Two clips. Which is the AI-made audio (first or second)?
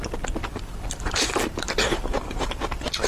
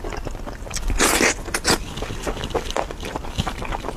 first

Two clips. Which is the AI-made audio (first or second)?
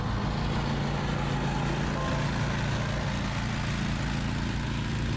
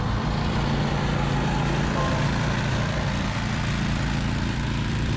second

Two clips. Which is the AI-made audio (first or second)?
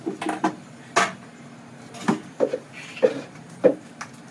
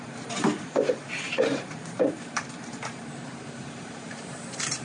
second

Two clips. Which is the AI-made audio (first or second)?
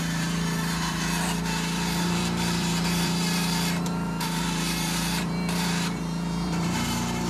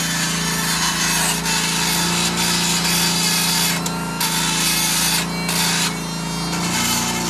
first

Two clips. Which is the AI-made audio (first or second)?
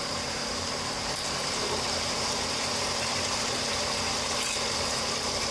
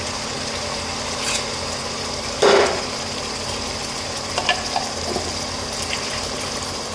first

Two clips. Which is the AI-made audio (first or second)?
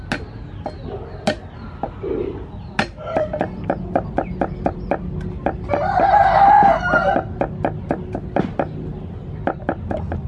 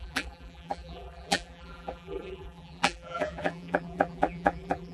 second